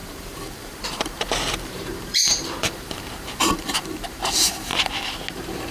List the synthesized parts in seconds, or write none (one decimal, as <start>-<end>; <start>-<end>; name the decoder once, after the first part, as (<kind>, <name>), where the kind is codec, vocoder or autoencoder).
0.0-4.7 (vocoder, BigVGAN v2); 5.3-5.7